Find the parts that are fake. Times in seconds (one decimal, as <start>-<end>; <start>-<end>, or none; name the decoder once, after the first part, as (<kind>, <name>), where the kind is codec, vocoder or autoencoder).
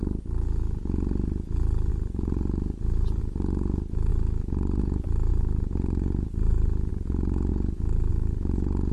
1.9-3.2 (vocoder, BigVGAN v2); 5.3-6.9